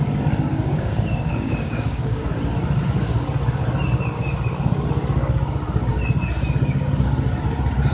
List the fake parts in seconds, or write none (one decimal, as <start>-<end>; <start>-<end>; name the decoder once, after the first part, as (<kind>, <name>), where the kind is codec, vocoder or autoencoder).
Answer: 0.5-2.3 (codec, DAC)